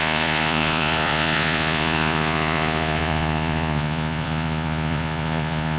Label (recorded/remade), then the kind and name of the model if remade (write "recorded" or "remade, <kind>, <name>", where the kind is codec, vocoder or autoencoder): remade, vocoder, Vocos